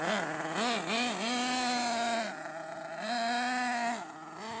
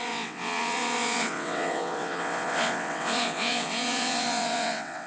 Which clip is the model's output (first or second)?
second